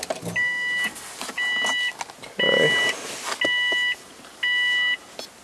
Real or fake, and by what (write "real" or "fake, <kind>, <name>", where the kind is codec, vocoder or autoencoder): real